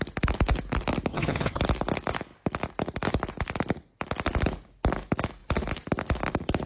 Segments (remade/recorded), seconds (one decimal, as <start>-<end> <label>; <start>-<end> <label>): 0.0-1.1 recorded; 1.1-1.6 remade; 1.6-6.7 recorded